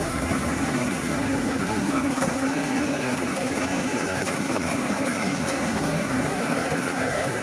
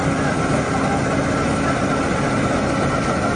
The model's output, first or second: first